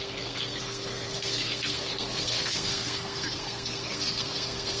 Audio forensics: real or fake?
fake